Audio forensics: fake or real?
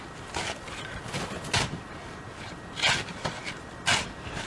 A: real